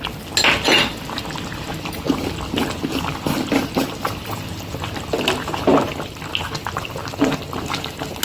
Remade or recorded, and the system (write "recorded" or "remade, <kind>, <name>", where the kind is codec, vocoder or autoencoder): recorded